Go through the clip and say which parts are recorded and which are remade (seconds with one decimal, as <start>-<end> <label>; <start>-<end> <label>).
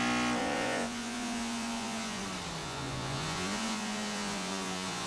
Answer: 0.0-0.4 recorded; 0.4-2.2 remade; 2.2-2.6 recorded; 2.6-5.1 remade